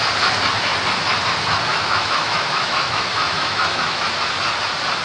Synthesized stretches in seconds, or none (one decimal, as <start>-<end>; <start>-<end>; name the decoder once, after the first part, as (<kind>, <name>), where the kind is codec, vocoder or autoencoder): 1.7-4.1 (autoencoder, DAC-VAE)